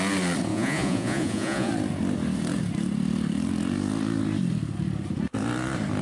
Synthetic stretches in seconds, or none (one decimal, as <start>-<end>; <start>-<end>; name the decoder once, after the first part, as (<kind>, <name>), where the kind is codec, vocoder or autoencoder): 0.5-1.7 (vocoder, Vocos)